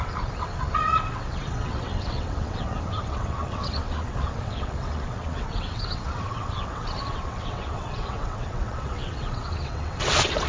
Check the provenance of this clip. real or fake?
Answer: fake